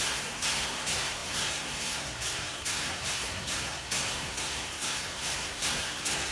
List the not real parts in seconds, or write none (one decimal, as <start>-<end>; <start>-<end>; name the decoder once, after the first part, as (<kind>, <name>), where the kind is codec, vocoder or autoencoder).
0.0-6.3 (codec, SNAC)